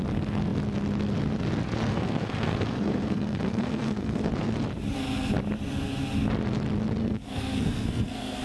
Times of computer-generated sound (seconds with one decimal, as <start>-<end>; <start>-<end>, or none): 1.9-4.3; 7.0-8.4

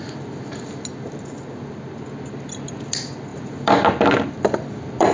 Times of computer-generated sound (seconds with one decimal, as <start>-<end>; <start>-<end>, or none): none

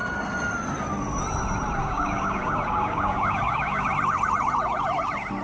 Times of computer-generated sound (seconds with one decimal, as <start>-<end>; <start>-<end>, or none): 1.8-3.9

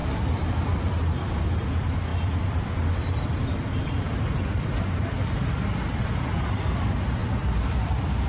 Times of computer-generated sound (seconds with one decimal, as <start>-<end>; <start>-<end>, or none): 0.0-0.5; 2.1-5.0; 7.2-8.3

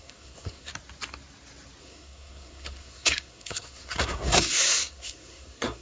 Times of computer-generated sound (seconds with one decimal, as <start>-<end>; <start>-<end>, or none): 0.0-0.7; 1.8-5.8